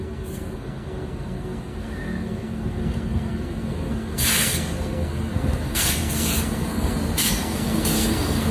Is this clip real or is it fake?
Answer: fake